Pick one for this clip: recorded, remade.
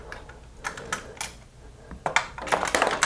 recorded